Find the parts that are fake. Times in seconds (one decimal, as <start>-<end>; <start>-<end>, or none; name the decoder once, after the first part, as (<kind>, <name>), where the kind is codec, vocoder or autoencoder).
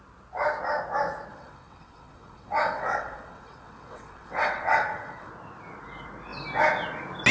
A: 1.3-5.3 (vocoder, WaveNeXt)